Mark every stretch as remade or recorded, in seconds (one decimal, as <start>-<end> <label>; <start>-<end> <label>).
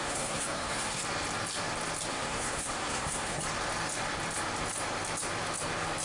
0.0-1.0 remade; 1.0-2.1 recorded; 2.1-3.4 remade; 3.4-6.0 recorded